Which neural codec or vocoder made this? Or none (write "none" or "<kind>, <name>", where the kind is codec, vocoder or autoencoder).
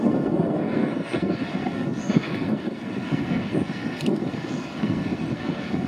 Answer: codec, SNAC